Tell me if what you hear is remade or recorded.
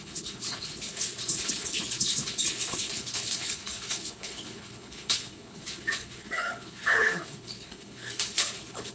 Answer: remade